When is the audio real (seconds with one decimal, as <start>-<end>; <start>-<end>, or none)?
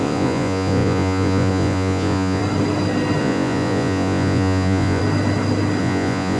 2.4-3.2; 5.0-5.8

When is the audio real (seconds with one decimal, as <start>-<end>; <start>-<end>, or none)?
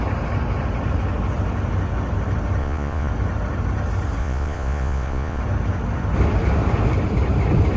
0.0-2.6; 3.1-4.2; 5.4-7.8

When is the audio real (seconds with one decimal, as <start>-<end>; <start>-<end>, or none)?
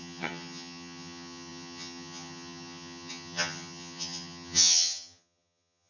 none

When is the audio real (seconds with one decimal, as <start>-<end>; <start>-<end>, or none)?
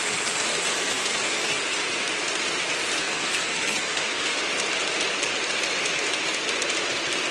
0.0-0.5; 1.6-3.0; 4.4-7.3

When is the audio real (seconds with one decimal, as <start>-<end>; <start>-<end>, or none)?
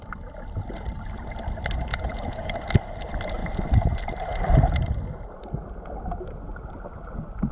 0.0-1.9; 2.5-7.5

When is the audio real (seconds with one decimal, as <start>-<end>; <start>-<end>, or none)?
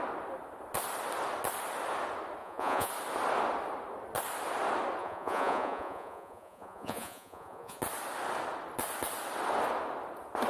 0.0-2.4; 2.9-5.0; 7.8-10.5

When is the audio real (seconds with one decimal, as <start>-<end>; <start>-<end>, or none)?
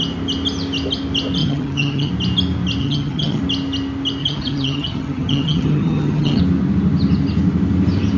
0.0-1.4; 2.1-2.8; 3.4-4.2; 6.4-8.2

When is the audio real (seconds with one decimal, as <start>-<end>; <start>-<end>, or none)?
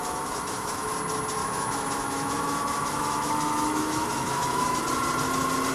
0.9-1.4; 4.8-5.7